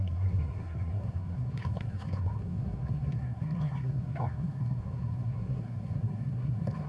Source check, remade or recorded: remade